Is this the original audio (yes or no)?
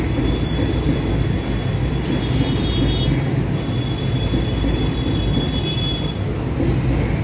yes